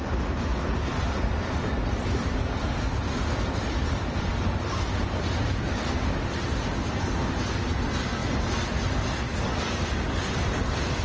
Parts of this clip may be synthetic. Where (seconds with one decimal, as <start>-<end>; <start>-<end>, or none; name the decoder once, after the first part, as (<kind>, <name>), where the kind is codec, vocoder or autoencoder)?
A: 0.5-2.6 (vocoder, BigVGAN v2)